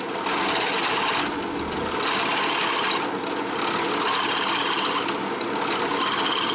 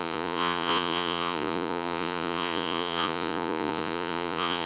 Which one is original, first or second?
first